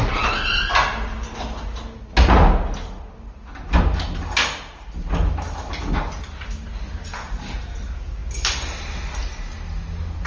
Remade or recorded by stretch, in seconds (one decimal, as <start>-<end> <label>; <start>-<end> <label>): 0.0-10.3 recorded